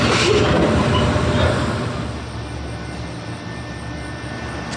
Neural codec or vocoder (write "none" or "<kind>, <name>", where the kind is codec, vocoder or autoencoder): none